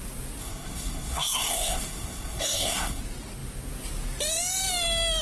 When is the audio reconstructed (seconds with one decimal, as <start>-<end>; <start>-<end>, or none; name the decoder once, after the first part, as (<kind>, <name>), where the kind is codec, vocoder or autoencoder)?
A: 0.4-3.0 (codec, SNAC)